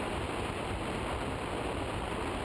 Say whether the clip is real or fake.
real